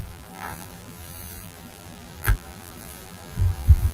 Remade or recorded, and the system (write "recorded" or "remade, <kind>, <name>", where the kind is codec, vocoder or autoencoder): remade, vocoder, BigVGAN v2